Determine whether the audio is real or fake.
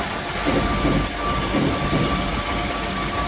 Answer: real